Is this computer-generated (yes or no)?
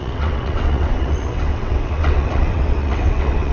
yes